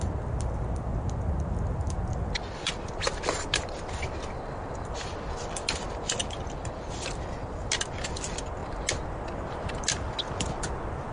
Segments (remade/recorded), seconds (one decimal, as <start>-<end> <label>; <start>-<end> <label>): 0.0-11.1 recorded